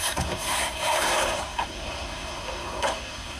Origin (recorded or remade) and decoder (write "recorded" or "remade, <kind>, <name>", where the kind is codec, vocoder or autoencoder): remade, codec, SNAC